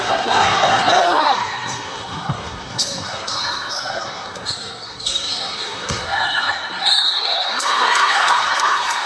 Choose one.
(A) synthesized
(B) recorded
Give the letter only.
A